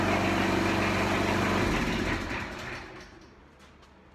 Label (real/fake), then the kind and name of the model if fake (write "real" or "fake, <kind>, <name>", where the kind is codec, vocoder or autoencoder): real